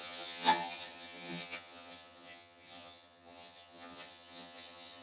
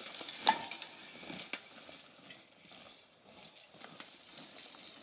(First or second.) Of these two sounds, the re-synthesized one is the first